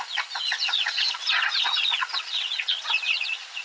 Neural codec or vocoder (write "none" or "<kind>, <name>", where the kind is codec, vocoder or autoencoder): vocoder, Vocos